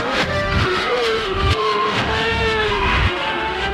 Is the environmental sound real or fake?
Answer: fake